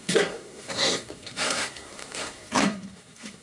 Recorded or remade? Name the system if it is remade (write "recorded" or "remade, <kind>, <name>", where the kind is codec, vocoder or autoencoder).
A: remade, codec, SNAC